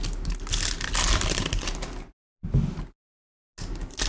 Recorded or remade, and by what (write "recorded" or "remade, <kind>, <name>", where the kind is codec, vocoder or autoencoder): recorded